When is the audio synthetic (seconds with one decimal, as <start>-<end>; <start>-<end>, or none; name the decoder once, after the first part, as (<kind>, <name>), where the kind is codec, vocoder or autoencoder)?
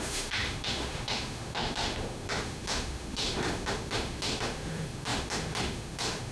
0.0-6.3 (autoencoder, DAC-VAE)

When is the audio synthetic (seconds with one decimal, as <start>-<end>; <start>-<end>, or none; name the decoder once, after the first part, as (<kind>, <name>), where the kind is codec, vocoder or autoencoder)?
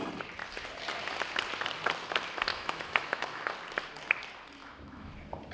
2.5-3.5 (autoencoder, DAC-VAE); 4.6-5.1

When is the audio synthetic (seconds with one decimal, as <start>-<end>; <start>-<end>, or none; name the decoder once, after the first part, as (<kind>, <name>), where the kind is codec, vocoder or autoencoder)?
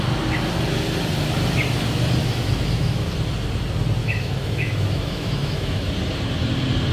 2.2-3.1 (autoencoder, DAC-VAE); 4.0-5.9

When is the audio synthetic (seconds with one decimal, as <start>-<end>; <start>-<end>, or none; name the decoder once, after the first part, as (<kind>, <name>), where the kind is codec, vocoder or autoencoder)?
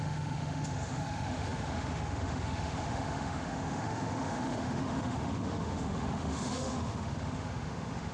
0.0-8.1 (autoencoder, DAC-VAE)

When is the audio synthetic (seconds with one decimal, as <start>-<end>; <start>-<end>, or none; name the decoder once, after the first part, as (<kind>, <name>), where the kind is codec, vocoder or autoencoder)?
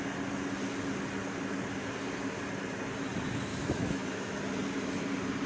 3.5-4.4 (autoencoder, DAC-VAE)